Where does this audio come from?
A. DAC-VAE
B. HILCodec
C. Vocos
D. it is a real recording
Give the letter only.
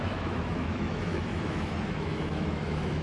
A